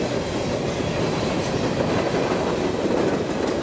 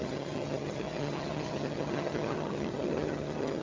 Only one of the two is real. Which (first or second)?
first